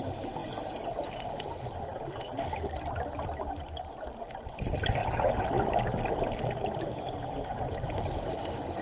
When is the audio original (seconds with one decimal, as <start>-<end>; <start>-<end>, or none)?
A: 0.0-8.8